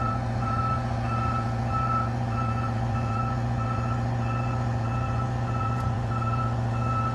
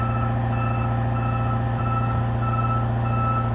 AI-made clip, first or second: first